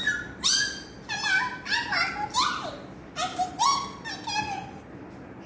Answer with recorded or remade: recorded